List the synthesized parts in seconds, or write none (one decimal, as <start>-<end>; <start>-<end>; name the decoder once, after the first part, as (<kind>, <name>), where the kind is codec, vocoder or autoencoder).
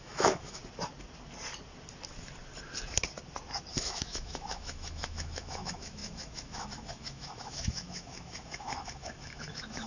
0.0-0.6 (autoencoder, DAC-VAE); 3.7-9.9